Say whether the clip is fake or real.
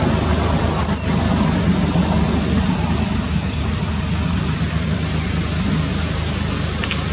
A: real